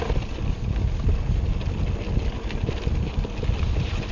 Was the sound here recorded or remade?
recorded